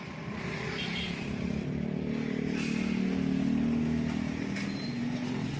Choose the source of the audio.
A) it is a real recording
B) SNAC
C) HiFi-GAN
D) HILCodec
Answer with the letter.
A